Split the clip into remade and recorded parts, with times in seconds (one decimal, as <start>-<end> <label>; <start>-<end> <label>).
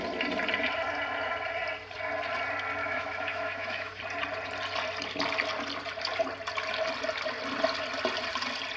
0.0-2.8 recorded; 2.8-4.0 remade; 4.0-8.8 recorded